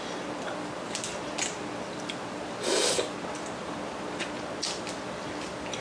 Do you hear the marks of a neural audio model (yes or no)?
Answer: no